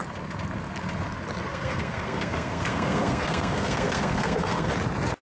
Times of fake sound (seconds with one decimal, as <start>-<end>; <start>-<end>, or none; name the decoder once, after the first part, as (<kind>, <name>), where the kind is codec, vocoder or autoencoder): 1.5-4.7 (codec, SNAC)